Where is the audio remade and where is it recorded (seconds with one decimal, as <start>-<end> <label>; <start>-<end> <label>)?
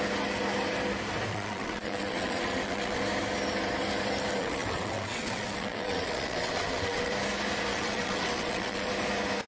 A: 0.0-1.3 recorded; 1.3-3.0 remade; 3.0-4.4 recorded; 4.4-7.1 remade; 7.1-7.7 recorded; 7.7-8.9 remade; 8.9-9.5 recorded